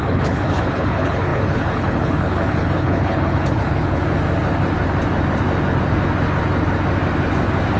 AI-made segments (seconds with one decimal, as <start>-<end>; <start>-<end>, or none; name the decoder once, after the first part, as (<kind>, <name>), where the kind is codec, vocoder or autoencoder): 0.0-4.0 (codec, HILCodec)